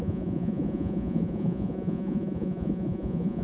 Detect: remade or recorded remade